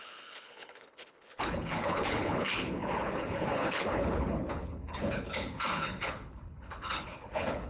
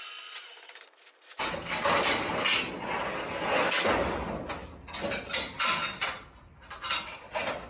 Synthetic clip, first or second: first